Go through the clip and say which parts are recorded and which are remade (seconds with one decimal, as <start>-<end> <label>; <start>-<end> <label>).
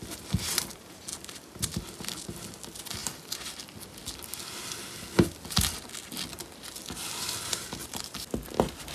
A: 0.0-3.0 remade; 3.0-7.1 recorded; 7.1-8.9 remade